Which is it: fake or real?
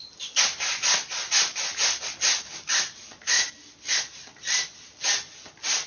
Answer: real